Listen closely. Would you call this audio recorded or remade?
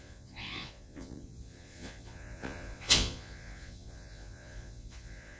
remade